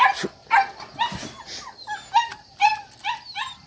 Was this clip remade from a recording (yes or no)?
no